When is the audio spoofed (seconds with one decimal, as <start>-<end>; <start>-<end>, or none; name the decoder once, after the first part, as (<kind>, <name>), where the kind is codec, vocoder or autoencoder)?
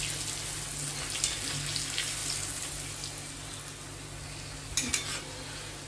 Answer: none